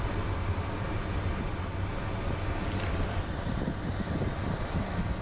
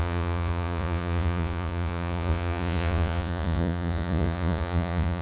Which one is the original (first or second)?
first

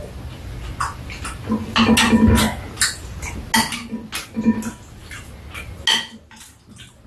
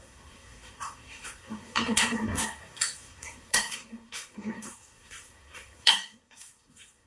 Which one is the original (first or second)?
first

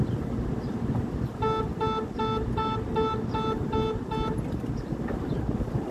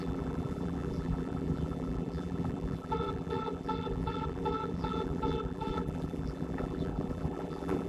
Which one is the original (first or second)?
first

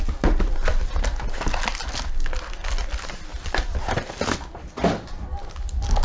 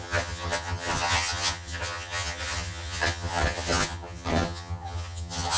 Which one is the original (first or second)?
first